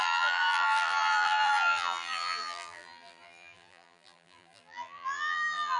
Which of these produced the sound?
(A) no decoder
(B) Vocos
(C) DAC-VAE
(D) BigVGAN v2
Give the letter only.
D